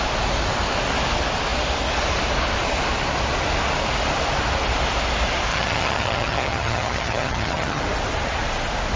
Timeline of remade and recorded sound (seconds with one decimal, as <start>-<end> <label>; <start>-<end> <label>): 0.0-5.5 recorded; 5.5-7.8 remade; 7.8-9.0 recorded